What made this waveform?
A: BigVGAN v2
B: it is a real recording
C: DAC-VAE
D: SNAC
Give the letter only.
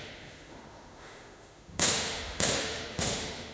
C